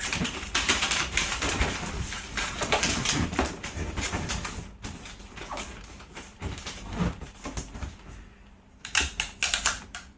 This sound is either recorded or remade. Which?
remade